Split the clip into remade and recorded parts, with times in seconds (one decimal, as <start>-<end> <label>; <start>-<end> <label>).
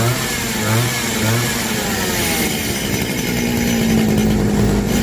0.0-5.0 recorded